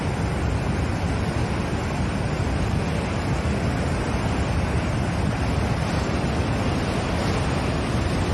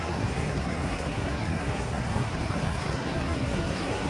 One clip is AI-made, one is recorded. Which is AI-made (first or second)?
second